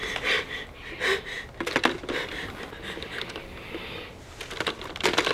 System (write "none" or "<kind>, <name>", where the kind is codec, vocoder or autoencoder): none